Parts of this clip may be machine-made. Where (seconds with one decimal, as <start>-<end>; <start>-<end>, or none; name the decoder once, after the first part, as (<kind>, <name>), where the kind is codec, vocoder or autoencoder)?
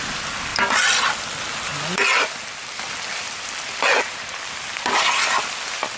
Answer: none